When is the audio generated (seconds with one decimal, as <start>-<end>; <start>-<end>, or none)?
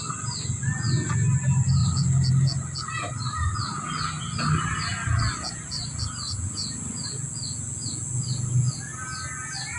none